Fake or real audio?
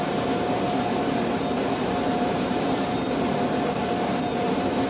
fake